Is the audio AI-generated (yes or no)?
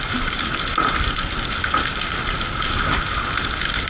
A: no